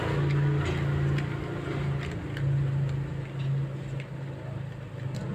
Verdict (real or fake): real